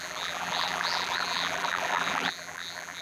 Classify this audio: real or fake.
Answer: fake